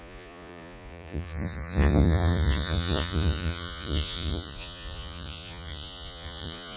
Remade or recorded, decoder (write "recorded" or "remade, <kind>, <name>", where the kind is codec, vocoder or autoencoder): remade, vocoder, Vocos